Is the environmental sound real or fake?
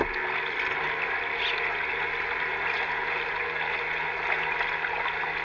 real